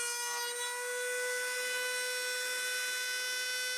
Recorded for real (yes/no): yes